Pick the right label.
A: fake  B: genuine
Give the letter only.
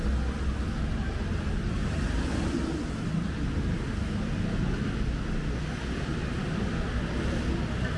B